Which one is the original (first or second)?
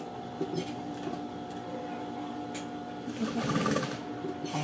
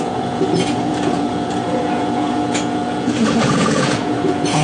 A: first